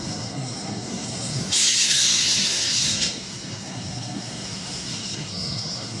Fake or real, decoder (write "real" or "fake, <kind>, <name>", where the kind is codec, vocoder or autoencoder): fake, codec, SNAC